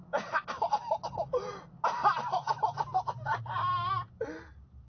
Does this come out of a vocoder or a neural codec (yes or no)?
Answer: no